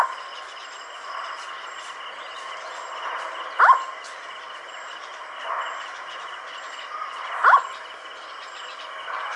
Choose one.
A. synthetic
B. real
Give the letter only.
B